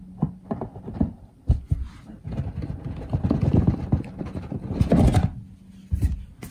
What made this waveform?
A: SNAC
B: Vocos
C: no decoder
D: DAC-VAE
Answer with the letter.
C